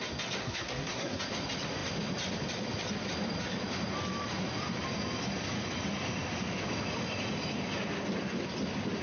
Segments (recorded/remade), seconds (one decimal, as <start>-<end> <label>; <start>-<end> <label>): 0.0-0.4 recorded; 0.4-1.2 remade; 1.2-9.0 recorded